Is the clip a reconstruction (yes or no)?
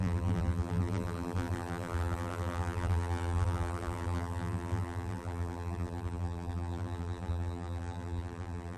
yes